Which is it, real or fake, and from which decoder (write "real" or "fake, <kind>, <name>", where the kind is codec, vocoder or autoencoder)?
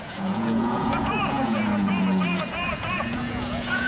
fake, vocoder, Vocos